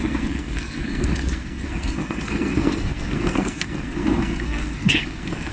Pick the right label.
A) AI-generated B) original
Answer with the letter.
A